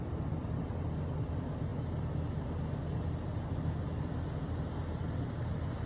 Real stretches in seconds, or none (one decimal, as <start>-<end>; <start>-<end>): 1.7-5.2